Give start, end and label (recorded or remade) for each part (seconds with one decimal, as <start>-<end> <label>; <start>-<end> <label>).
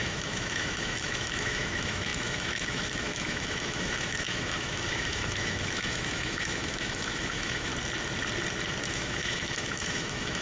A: 0.0-7.7 remade; 7.7-8.9 recorded; 8.9-10.4 remade